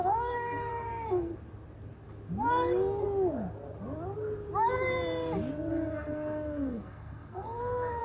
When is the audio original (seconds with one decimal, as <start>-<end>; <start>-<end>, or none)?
1.3-5.7